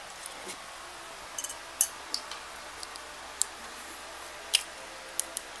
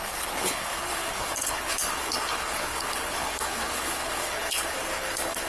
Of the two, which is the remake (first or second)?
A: second